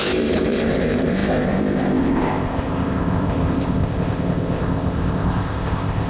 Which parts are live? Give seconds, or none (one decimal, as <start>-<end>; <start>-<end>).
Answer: none